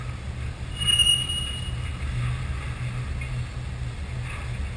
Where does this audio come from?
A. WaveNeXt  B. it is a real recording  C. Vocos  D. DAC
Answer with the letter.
B